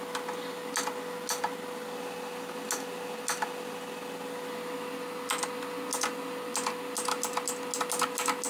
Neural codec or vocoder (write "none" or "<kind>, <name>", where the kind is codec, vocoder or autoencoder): none